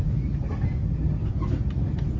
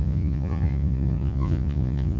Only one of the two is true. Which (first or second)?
first